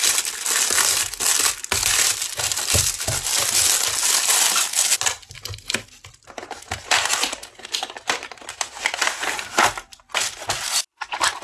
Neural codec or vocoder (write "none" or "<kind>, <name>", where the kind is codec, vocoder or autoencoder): none